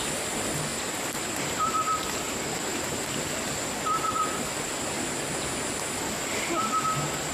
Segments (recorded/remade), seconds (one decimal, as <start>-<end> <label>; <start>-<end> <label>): 0.0-7.3 recorded